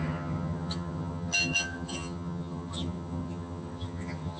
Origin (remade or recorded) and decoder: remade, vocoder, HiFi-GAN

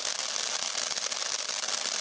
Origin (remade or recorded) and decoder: recorded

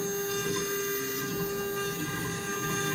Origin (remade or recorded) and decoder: recorded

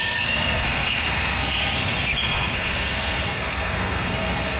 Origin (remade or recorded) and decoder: remade, codec, SNAC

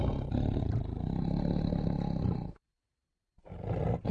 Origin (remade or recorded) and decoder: recorded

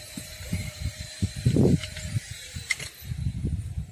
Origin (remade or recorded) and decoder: remade, vocoder, BigVGAN v2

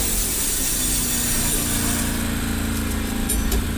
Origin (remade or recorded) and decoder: recorded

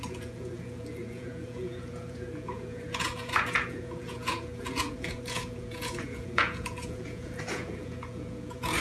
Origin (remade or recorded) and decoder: remade, vocoder, Vocos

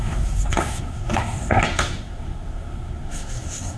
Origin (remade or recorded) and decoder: remade, codec, SNAC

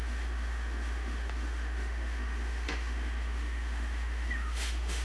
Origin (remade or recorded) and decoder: remade, autoencoder, DAC-VAE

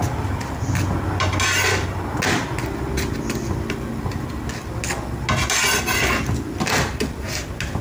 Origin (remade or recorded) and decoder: recorded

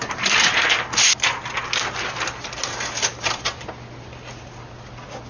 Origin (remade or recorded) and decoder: recorded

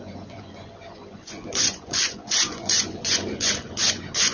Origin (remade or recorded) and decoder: remade, vocoder, Vocos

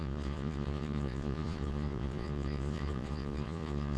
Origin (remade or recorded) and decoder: remade, vocoder, Vocos